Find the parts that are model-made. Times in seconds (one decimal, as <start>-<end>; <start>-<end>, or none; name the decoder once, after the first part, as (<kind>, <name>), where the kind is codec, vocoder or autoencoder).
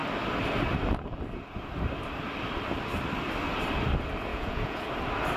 4.3-4.9 (vocoder, Vocos)